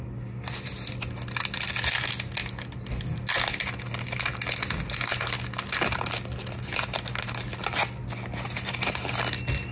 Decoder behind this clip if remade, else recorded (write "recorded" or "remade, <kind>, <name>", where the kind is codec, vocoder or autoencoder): recorded